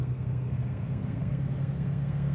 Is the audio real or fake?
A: fake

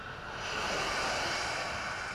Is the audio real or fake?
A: real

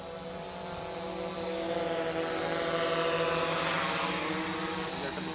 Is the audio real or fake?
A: real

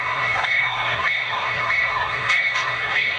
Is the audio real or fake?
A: fake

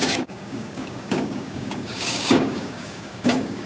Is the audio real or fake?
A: fake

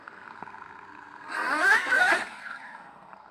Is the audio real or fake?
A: fake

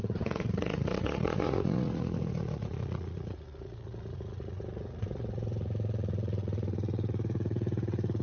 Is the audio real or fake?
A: fake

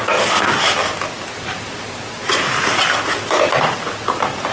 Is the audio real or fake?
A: real